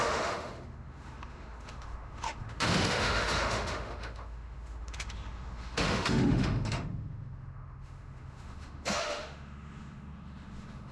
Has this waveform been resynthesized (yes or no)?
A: yes